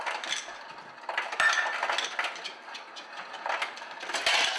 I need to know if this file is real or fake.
real